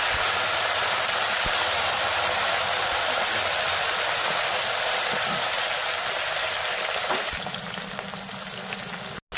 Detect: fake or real real